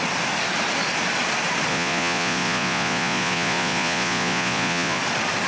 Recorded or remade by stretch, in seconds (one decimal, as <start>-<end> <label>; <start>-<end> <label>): 0.0-1.7 recorded; 1.7-5.0 remade; 5.0-5.5 recorded